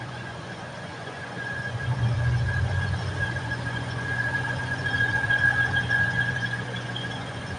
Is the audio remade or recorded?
remade